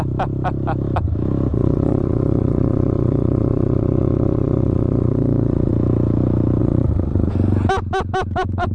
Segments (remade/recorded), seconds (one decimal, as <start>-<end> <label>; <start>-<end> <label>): 0.0-1.5 recorded; 1.5-5.7 remade; 5.7-6.6 recorded; 6.6-7.3 remade; 7.3-8.7 recorded